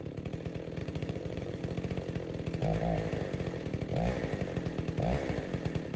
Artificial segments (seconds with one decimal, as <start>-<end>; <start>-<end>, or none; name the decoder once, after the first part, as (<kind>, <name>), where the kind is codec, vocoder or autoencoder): 0.8-1.6 (vocoder, Vocos)